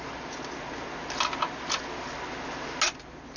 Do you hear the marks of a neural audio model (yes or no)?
no